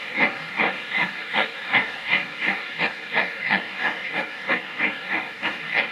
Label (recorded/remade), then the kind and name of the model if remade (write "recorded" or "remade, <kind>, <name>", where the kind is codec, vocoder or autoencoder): remade, codec, DAC